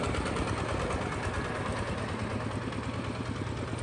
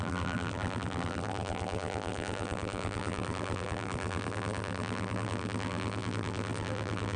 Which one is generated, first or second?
second